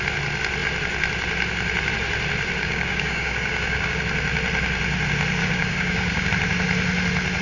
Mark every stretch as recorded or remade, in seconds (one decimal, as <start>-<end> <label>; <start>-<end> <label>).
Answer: 0.0-2.6 recorded; 2.6-4.0 remade; 4.0-5.4 recorded; 5.4-6.3 remade; 6.3-7.4 recorded